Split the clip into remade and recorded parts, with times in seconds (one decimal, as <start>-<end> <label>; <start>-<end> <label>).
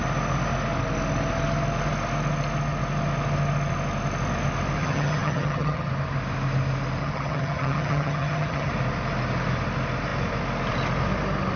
0.0-4.8 recorded; 4.8-5.9 remade; 5.9-7.0 recorded; 7.0-8.7 remade; 8.7-11.6 recorded